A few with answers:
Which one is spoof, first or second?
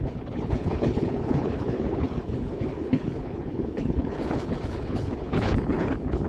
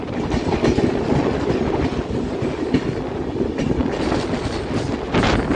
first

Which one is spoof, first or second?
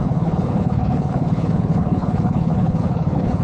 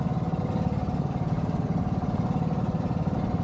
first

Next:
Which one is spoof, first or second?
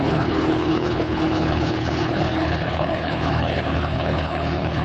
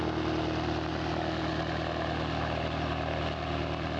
first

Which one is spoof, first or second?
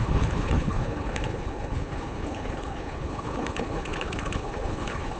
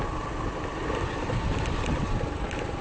first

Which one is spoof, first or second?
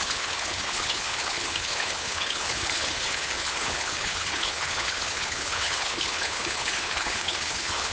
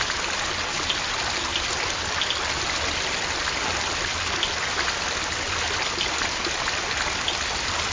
first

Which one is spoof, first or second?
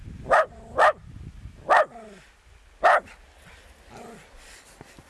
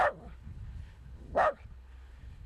second